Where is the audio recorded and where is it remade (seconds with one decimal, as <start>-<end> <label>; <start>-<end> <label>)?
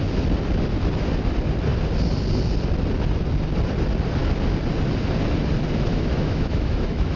0.0-5.9 recorded; 5.9-7.2 remade